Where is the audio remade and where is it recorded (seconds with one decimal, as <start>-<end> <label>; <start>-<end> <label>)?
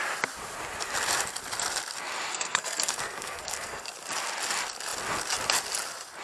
0.0-2.3 recorded; 2.3-3.9 remade; 3.9-6.2 recorded